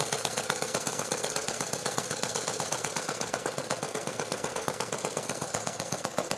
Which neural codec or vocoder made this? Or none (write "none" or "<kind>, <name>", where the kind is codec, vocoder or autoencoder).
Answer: codec, SNAC